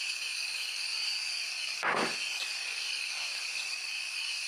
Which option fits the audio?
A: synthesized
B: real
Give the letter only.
A